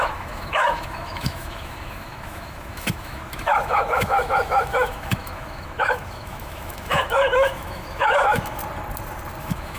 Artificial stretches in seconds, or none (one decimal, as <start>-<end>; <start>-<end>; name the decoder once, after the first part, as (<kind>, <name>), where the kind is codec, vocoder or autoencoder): 0.0-8.6 (autoencoder, DAC-VAE); 9.4-9.8